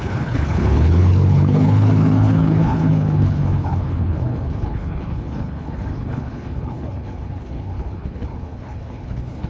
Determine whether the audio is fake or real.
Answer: fake